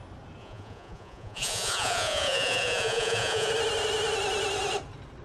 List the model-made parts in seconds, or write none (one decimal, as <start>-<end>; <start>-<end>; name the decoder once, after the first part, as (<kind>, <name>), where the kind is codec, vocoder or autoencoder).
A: 0.4-3.5 (vocoder, Vocos)